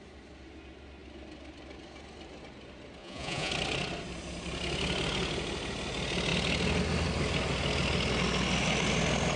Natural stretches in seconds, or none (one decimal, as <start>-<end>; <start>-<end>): 0.0-3.0; 3.5-9.4

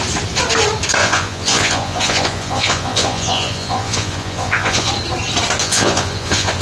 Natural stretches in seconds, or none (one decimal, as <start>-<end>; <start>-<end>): 0.0-1.0; 4.9-5.6

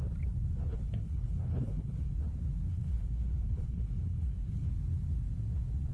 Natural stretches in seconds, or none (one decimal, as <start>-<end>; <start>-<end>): 0.0-0.7; 2.1-2.7; 4.7-5.9